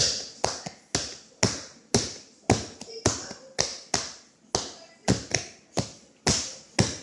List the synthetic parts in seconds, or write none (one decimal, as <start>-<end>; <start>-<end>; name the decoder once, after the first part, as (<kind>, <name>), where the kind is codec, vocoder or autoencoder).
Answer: none